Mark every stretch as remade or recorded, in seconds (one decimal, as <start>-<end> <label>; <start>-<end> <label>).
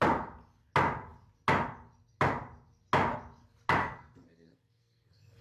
0.0-3.8 recorded; 3.8-5.4 remade